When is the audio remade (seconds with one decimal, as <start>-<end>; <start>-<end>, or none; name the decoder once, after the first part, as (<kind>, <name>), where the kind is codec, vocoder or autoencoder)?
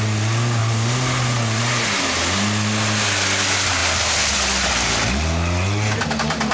none